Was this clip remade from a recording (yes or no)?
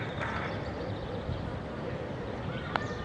no